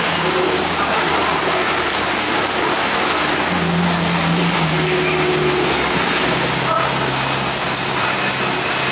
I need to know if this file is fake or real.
real